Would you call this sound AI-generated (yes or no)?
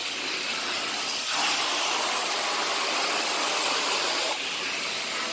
no